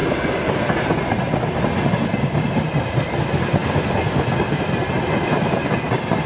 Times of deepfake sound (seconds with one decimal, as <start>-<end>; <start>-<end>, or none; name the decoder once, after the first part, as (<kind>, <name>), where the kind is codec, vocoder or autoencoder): none